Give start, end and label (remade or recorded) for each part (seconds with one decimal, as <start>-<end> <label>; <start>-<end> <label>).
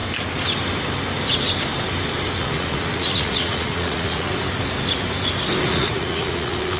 0.0-2.4 recorded; 2.4-4.3 remade; 4.3-5.6 recorded; 5.6-6.8 remade